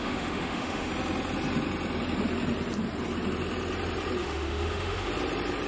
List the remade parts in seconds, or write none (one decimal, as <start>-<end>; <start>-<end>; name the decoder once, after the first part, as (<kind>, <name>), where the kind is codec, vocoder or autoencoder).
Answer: 0.0-0.9 (autoencoder, DAC-VAE); 4.2-5.1